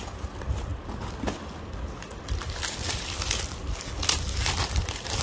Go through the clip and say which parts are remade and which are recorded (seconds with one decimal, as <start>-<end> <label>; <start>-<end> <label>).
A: 0.0-5.2 recorded